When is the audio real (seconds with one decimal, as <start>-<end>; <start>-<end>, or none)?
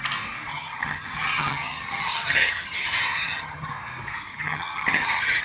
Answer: 0.0-0.5; 3.7-4.3